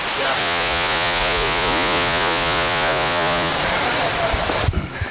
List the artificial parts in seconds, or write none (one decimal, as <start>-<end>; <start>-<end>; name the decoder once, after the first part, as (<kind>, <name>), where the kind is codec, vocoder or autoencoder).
0.4-3.5 (vocoder, Vocos)